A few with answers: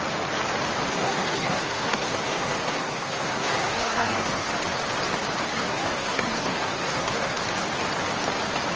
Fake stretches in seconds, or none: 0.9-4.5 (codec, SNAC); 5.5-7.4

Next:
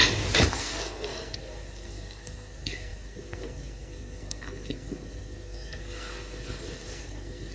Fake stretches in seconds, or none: 0.5-7.5 (codec, SNAC)

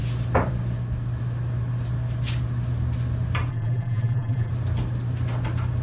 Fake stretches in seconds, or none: 3.5-4.5 (vocoder, BigVGAN v2)